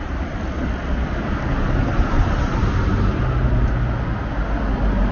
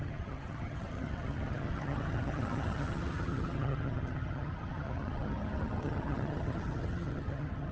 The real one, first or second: first